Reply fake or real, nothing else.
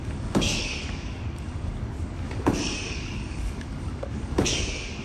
fake